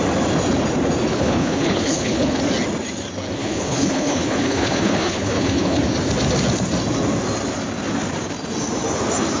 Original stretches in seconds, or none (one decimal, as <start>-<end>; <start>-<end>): 0.0-1.1; 2.4-3.4; 5.8-9.4